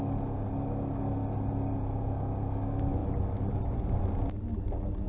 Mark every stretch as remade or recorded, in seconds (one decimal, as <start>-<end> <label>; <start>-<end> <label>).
0.0-5.1 recorded